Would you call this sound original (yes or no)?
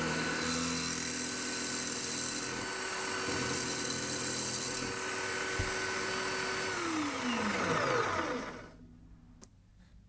yes